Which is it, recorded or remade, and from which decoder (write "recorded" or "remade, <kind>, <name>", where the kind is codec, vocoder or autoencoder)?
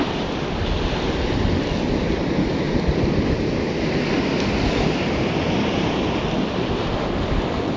recorded